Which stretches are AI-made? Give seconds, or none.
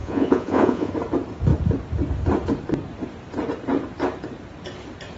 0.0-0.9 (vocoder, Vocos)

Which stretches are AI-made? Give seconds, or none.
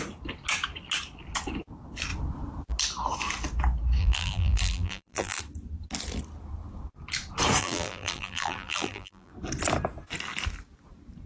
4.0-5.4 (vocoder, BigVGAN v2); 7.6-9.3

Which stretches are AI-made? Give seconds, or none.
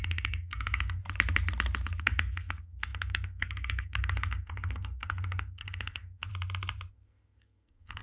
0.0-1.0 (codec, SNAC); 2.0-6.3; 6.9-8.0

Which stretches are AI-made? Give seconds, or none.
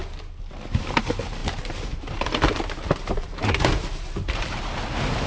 0.8-5.3 (vocoder, BigVGAN v2)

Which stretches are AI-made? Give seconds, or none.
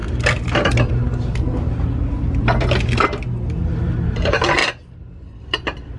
4.6-6.0 (vocoder, BigVGAN v2)